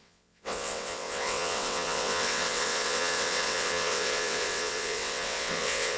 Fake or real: fake